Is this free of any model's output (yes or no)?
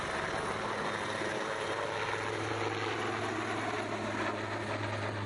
yes